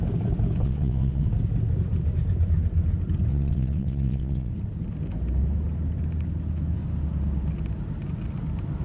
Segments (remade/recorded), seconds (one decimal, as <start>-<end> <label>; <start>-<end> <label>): 0.0-0.6 recorded; 0.6-1.3 remade; 1.3-3.3 recorded; 3.3-4.5 remade; 4.5-8.8 recorded